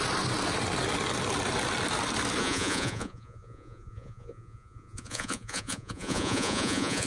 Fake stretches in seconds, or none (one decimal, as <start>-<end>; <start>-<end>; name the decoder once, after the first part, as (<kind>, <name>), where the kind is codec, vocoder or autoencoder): 2.4-7.1 (vocoder, Vocos)